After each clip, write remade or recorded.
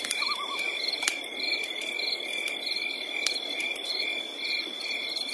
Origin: remade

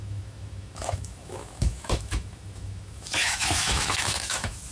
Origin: remade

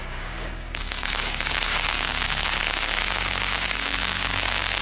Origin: remade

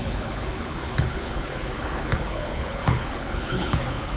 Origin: remade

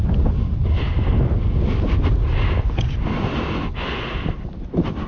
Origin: recorded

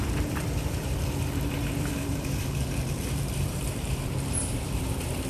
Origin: remade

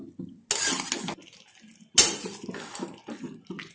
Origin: recorded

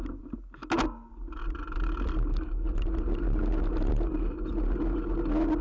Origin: recorded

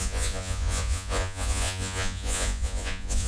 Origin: remade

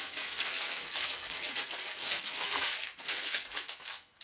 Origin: remade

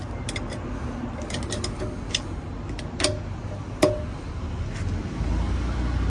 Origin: recorded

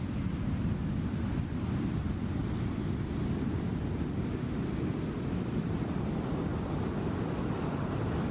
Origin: recorded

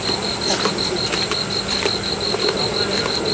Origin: recorded